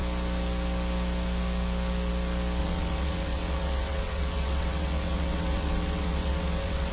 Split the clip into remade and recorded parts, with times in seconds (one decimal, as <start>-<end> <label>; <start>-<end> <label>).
0.0-2.6 recorded; 2.6-6.9 remade